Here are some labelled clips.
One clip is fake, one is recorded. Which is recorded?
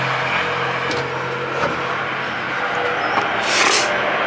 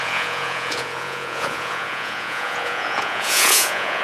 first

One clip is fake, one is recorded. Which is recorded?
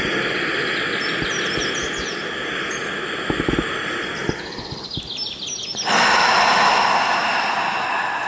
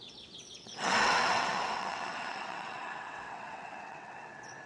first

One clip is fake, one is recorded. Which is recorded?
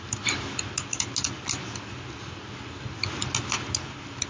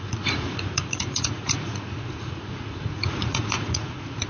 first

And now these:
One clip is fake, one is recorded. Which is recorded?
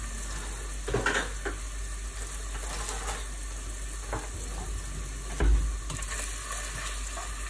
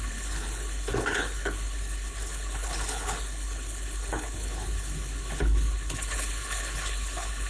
first